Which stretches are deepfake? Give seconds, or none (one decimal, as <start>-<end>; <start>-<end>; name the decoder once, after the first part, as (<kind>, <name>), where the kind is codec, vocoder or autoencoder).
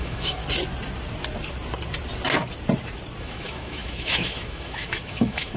0.0-0.4 (autoencoder, DAC-VAE); 3.2-5.6